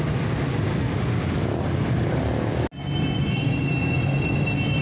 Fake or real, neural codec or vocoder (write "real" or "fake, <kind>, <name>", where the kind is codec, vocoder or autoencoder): real